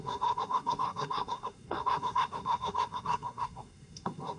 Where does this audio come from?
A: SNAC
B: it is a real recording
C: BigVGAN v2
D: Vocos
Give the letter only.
A